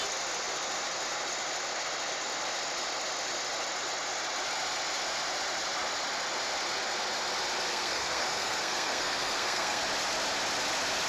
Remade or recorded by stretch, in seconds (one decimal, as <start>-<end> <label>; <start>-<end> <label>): 0.0-7.7 recorded; 7.7-9.8 remade; 9.8-11.1 recorded